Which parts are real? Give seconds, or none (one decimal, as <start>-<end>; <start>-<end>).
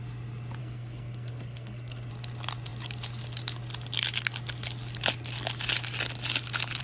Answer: 0.0-0.6; 2.1-6.8